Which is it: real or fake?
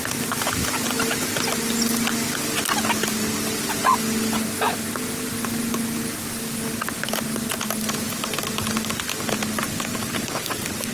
real